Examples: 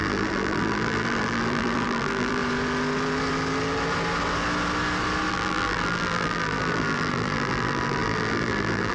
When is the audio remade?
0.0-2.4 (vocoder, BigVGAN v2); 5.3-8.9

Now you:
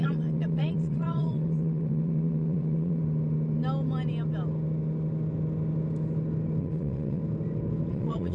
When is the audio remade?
0.0-3.0 (vocoder, Vocos); 6.6-7.2; 7.9-8.3

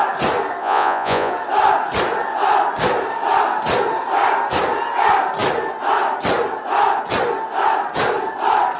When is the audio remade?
0.6-1.3 (vocoder, Vocos)

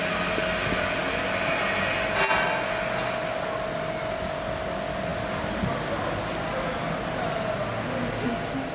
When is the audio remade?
none

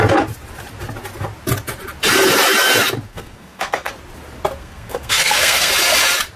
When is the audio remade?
3.1-3.9 (codec, SNAC); 4.6-5.7

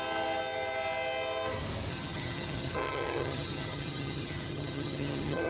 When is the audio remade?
1.9-5.5 (vocoder, HiFi-GAN)

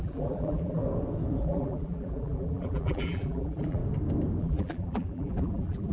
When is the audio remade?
0.0-0.8 (vocoder, BigVGAN v2); 1.4-3.8; 4.4-5.9